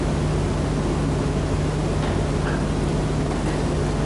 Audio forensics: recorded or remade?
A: recorded